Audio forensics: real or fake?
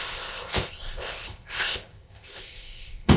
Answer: fake